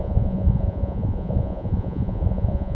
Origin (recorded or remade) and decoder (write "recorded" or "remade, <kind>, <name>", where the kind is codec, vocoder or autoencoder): remade, vocoder, Vocos